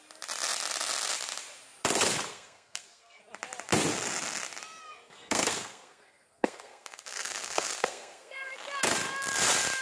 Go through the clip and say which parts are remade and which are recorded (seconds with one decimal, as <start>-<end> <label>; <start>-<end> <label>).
0.0-2.3 recorded; 2.3-3.2 remade; 3.2-4.8 recorded; 4.8-8.5 remade; 8.5-9.8 recorded